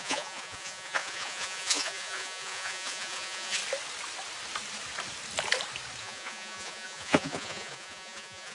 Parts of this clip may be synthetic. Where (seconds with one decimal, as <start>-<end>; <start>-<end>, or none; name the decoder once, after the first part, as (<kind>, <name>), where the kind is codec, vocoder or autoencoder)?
0.0-3.6 (vocoder, Vocos); 6.0-8.5